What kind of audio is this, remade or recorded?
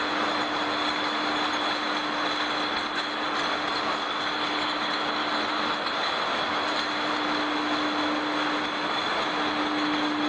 recorded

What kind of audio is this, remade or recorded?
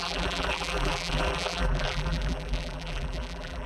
remade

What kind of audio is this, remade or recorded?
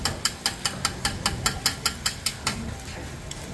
recorded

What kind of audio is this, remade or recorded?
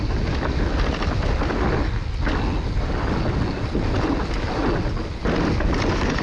recorded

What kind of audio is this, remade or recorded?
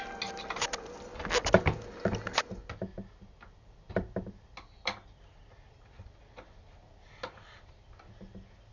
recorded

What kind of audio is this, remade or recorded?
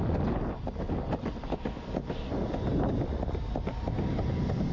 recorded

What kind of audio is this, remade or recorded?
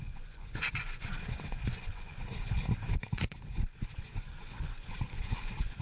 remade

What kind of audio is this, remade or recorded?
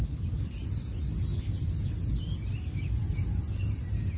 recorded